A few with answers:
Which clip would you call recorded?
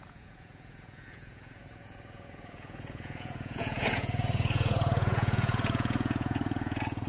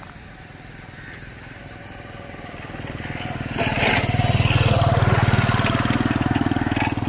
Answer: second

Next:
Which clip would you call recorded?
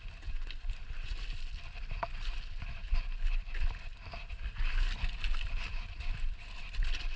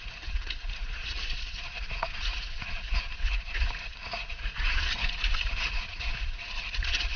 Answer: first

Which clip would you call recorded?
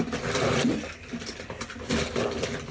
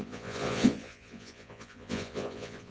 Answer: first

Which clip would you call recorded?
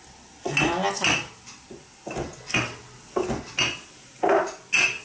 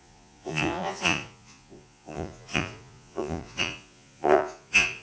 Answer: first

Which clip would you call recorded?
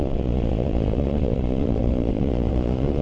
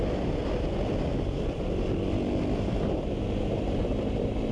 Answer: second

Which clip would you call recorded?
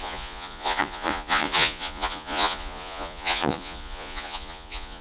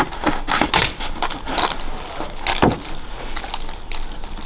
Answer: second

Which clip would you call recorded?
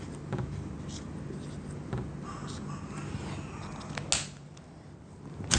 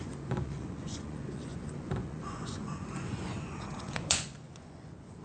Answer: first